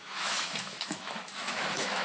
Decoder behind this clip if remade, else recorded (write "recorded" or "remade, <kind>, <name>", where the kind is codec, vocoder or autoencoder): remade, autoencoder, DAC-VAE